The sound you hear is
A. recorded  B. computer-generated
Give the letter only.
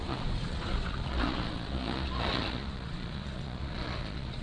B